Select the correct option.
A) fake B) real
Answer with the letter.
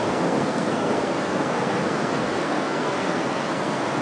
A